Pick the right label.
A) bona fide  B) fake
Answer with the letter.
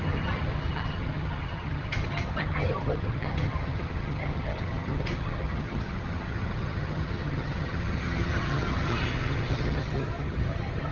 B